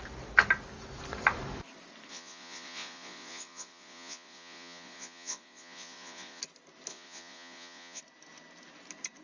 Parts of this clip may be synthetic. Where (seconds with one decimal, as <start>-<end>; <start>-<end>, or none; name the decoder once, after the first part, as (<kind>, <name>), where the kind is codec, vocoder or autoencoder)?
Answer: 2.1-6.4 (vocoder, Vocos); 6.9-8.0